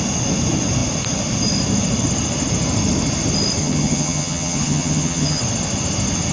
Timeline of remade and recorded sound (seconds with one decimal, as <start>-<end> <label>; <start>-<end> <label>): 0.0-3.6 recorded; 3.6-5.4 remade; 5.4-6.3 recorded